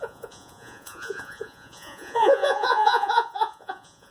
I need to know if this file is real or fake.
fake